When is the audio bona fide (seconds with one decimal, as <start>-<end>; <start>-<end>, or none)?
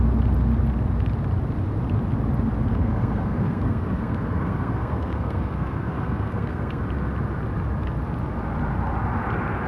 0.0-2.7; 6.8-9.7